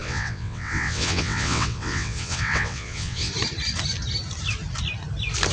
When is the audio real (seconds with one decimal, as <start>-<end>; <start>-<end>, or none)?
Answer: 3.3-5.5